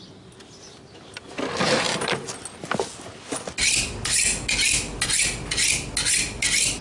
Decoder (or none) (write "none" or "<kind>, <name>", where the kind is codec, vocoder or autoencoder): none